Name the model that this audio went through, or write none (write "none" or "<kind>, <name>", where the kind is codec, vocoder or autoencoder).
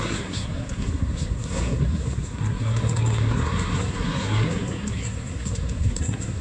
codec, SNAC